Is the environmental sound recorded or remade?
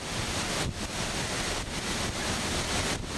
recorded